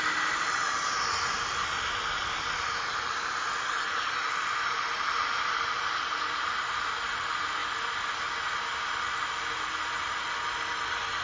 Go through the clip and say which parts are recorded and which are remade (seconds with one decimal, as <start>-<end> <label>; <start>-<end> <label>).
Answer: 0.0-11.2 recorded